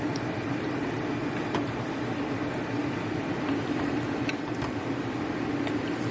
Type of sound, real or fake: fake